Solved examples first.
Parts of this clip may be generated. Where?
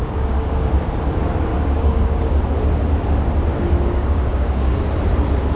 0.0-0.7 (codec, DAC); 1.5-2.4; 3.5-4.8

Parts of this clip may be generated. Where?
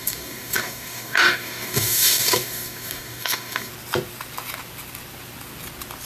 0.0-3.7 (codec, DAC)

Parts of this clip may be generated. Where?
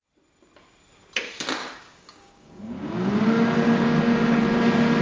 1.6-4.4 (codec, DAC)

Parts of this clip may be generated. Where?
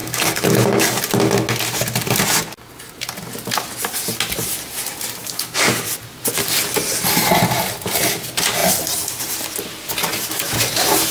0.0-1.0 (codec, DAC); 5.2-5.9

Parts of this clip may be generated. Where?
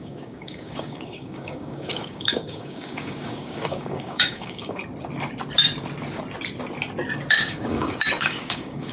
0.0-4.8 (codec, DAC); 7.3-8.9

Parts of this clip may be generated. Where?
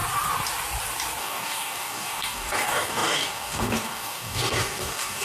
1.2-5.2 (codec, DAC)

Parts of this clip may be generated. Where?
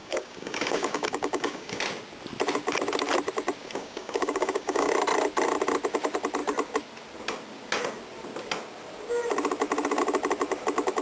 0.0-1.8 (codec, DAC); 3.6-4.9